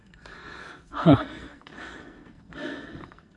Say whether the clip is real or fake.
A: fake